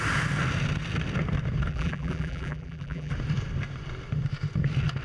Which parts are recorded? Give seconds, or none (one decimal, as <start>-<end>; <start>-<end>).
0.0-1.7; 3.1-5.0